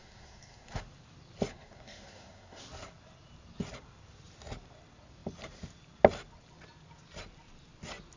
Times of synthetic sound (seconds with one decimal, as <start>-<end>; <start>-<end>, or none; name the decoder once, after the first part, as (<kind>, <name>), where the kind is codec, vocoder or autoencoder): 0.0-0.8 (codec, SNAC); 1.5-2.6